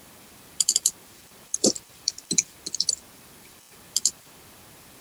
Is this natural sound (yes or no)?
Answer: no